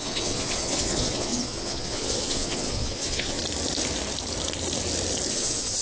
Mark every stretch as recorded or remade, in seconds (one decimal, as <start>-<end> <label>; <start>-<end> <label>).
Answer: 0.0-3.4 remade; 3.4-5.3 recorded; 5.3-5.8 remade